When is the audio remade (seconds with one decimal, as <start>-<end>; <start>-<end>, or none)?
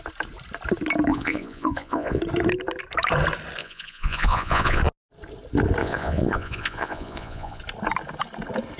1.1-2.2; 3.6-4.8; 5.8-7.6